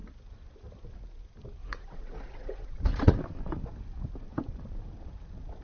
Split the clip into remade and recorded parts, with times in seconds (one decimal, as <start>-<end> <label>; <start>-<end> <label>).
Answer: 0.0-1.6 recorded; 1.6-3.2 remade; 3.2-5.6 recorded